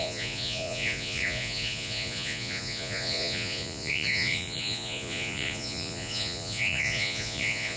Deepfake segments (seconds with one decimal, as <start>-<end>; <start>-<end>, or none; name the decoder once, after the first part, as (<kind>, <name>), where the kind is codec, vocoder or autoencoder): 0.0-7.8 (vocoder, Vocos)